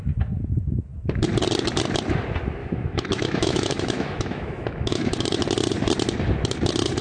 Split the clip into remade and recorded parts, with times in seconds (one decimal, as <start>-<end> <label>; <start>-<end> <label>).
0.0-2.6 recorded; 2.6-5.4 remade; 5.4-7.0 recorded